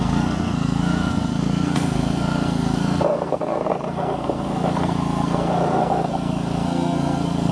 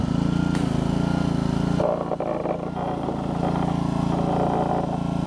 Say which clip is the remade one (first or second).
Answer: first